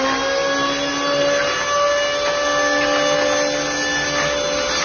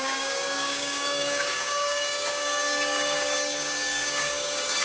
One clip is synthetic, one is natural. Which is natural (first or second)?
first